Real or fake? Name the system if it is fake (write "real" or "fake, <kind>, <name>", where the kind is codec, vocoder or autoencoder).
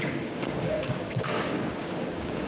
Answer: fake, codec, DAC